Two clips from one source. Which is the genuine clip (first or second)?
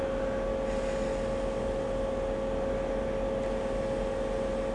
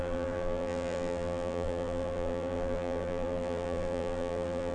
first